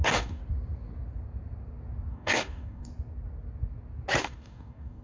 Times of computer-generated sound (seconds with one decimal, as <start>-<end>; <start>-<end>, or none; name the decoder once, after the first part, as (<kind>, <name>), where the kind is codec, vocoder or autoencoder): 0.0-0.4 (codec, DAC); 2.1-2.9; 4.2-5.0